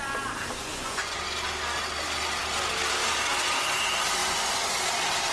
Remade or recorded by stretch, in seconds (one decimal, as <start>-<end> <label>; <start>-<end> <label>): 0.0-0.6 recorded; 0.6-1.2 remade; 1.2-4.2 recorded; 4.2-4.7 remade; 4.7-5.3 recorded

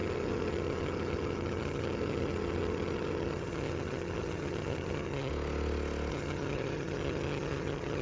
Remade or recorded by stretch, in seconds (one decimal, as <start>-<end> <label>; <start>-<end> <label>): 0.0-5.3 remade; 5.3-6.1 recorded; 6.1-8.0 remade

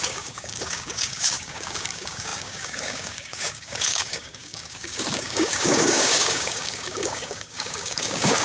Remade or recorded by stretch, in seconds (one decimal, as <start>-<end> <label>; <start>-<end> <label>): 0.0-8.4 remade